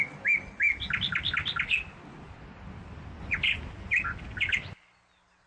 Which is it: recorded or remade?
recorded